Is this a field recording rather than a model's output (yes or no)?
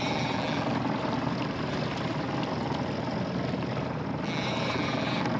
yes